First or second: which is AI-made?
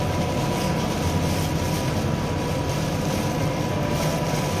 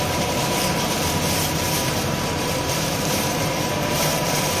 second